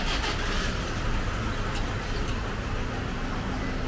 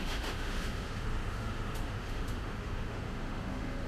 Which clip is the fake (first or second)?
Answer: second